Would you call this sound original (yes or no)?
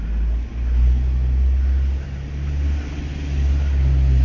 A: yes